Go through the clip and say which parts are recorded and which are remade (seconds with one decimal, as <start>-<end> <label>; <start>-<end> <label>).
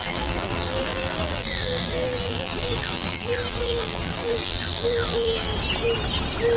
0.0-5.5 remade; 5.5-6.6 recorded